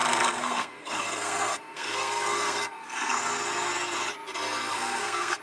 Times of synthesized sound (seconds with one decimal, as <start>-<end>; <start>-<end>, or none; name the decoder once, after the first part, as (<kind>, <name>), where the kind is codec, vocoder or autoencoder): 0.0-3.2 (codec, SNAC); 4.7-5.4